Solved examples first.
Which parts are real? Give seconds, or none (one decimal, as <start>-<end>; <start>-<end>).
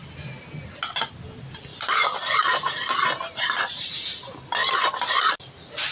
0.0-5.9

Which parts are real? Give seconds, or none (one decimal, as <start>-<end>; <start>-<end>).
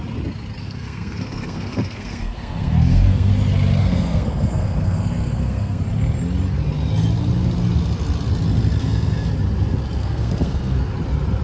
0.0-0.6; 3.3-3.8; 5.8-8.8; 9.3-10.0; 10.8-11.4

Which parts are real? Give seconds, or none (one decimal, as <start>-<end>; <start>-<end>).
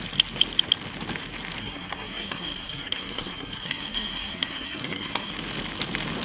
0.0-1.6; 5.3-6.2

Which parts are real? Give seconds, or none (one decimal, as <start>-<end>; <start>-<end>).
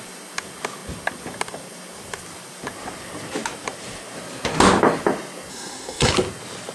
0.0-5.5; 6.1-6.7